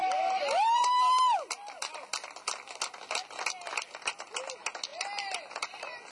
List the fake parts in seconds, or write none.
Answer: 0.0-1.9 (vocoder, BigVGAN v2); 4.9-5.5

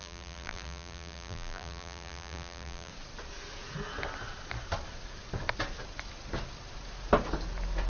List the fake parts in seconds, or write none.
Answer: 0.0-2.9 (vocoder, BigVGAN v2)

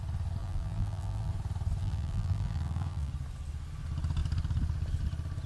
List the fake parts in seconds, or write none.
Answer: 0.4-1.3 (vocoder, BigVGAN v2); 1.8-3.1

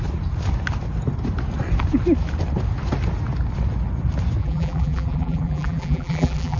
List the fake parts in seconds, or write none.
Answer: 4.4-6.6 (vocoder, BigVGAN v2)